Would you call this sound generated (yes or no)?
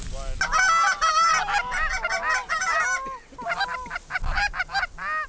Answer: no